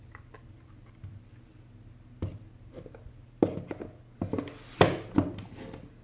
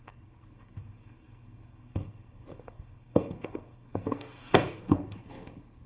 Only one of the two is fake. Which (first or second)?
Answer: second